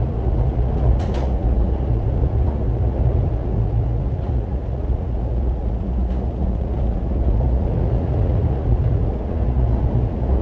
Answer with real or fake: fake